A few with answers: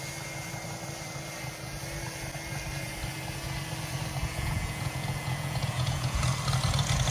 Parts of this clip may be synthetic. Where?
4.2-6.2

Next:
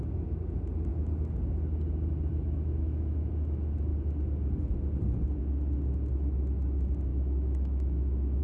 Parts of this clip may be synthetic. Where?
2.3-3.3; 7.1-8.4

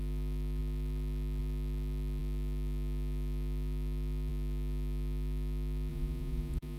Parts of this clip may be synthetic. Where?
5.9-6.8